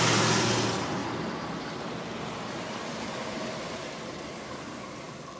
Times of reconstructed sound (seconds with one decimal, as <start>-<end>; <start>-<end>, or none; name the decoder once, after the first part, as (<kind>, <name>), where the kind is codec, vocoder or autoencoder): 1.0-4.2 (vocoder, BigVGAN v2)